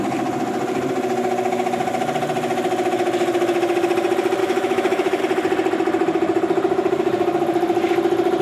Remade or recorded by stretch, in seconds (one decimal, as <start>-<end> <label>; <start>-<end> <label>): 0.0-4.4 recorded; 4.4-5.2 remade; 5.2-8.4 recorded